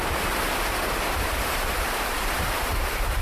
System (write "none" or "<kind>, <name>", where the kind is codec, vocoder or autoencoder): vocoder, BigVGAN v2